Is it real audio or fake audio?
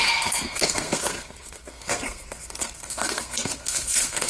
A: fake